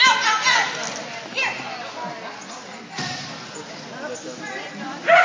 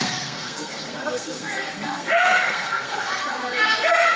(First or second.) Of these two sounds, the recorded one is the first